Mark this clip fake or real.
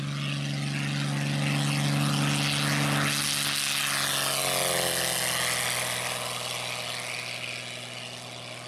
real